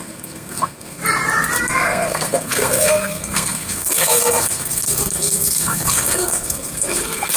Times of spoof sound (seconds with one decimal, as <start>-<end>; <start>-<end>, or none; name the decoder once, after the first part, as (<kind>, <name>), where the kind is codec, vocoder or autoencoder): 0.0-1.0 (codec, SNAC); 1.6-7.4